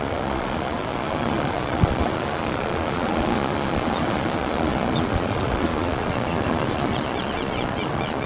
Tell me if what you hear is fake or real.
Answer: fake